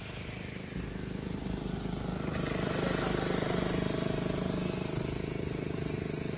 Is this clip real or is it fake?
real